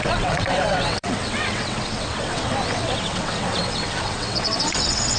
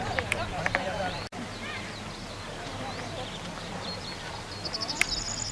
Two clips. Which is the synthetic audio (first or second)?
first